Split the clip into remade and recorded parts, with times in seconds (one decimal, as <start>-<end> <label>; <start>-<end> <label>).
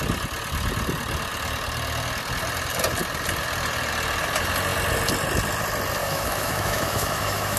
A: 0.0-6.0 recorded; 6.0-7.6 remade